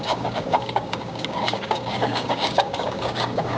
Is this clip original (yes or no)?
no